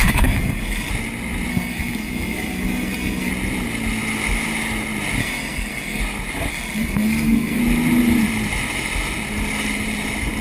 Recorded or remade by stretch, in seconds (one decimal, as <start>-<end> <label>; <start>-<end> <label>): 0.0-0.9 remade; 0.9-1.5 recorded; 1.5-3.3 remade; 3.3-5.2 recorded; 5.2-6.0 remade; 6.0-6.5 recorded; 6.5-7.6 remade; 7.6-10.4 recorded